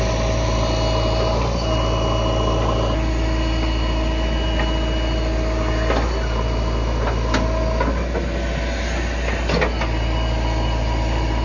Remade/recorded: recorded